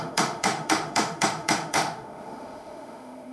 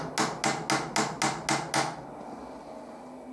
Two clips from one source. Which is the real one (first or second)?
second